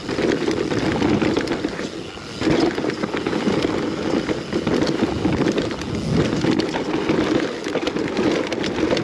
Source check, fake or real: real